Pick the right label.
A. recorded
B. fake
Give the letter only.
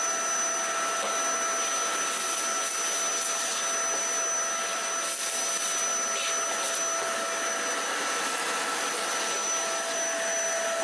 A